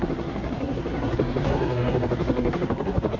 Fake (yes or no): yes